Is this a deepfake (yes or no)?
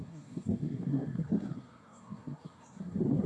yes